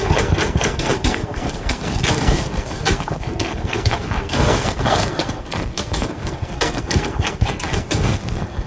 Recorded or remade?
remade